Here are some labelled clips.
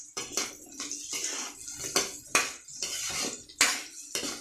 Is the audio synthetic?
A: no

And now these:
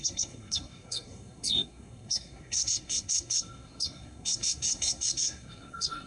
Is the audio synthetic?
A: yes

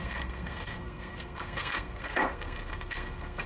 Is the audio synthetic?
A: yes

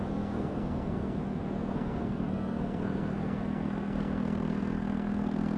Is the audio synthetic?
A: yes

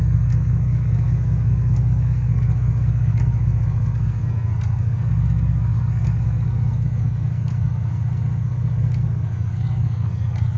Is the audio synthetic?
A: yes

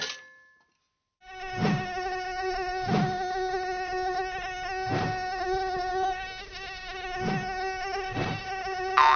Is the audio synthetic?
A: no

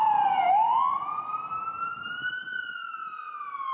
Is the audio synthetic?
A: no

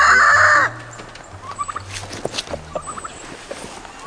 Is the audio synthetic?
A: no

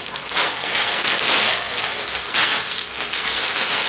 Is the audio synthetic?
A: yes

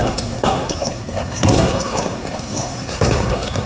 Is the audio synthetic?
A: yes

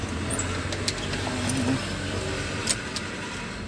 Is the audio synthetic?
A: no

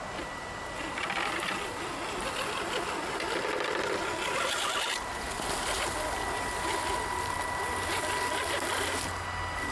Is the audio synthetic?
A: no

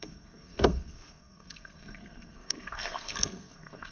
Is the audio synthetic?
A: yes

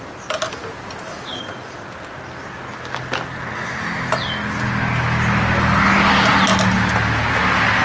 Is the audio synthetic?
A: no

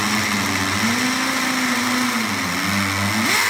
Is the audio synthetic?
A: no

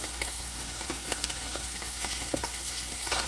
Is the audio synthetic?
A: yes